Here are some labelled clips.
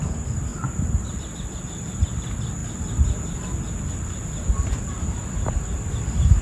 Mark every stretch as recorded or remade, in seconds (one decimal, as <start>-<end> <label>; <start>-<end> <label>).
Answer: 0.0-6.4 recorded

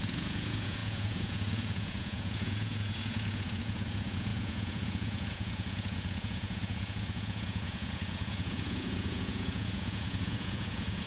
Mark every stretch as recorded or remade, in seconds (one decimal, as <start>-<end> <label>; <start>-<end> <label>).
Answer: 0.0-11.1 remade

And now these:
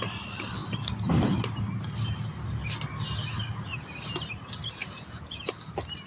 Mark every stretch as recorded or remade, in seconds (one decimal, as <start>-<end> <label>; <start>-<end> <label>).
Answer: 0.0-4.8 recorded; 4.8-5.5 remade; 5.5-6.1 recorded